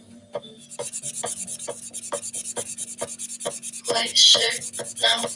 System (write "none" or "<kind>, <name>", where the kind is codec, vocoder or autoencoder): none